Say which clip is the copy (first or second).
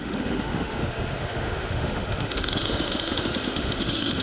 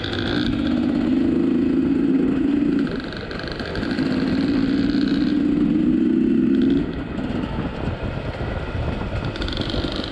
first